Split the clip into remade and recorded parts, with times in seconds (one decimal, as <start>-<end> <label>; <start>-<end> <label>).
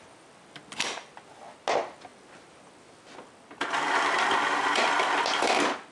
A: 0.0-5.9 recorded